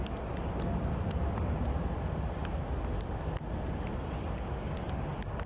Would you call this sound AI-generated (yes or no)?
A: no